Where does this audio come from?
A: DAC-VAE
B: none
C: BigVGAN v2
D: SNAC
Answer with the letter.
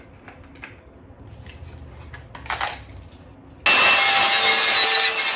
B